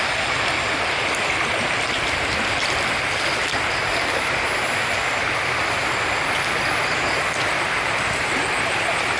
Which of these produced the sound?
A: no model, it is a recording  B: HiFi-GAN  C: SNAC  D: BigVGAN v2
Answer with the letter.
A